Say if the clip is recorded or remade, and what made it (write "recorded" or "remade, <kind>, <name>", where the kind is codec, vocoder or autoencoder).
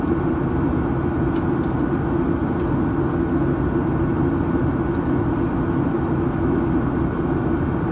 recorded